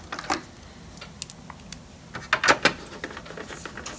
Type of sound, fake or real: real